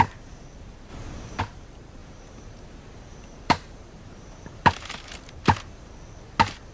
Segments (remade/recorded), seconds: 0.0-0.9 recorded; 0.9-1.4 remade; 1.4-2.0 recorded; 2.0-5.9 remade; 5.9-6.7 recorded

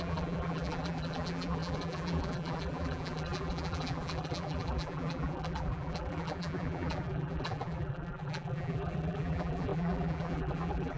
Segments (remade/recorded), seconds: 0.0-11.0 remade

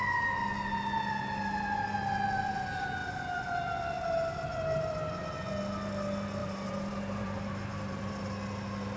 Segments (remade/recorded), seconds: 0.0-3.0 recorded; 3.0-5.1 remade; 5.1-6.4 recorded; 6.4-8.1 remade; 8.1-9.0 recorded

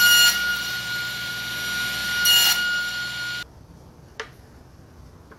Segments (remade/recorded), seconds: 0.0-0.5 recorded; 0.5-1.3 remade; 1.3-5.4 recorded

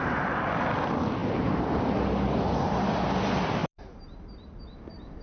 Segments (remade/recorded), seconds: 0.0-1.2 remade; 1.2-3.1 recorded; 3.1-3.6 remade; 3.6-4.6 recorded; 4.6-5.2 remade

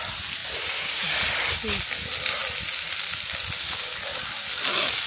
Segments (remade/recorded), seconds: 0.0-0.4 recorded; 0.4-1.4 remade; 1.4-5.1 recorded

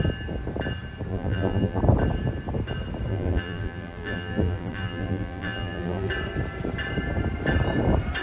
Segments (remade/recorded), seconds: 0.0-1.1 recorded; 1.1-1.8 remade; 1.8-3.1 recorded; 3.1-6.1 remade; 6.1-8.2 recorded

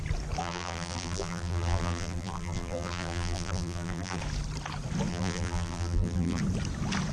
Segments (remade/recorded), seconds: 0.0-0.4 recorded; 0.4-4.2 remade; 4.2-5.1 recorded; 5.1-6.4 remade; 6.4-7.1 recorded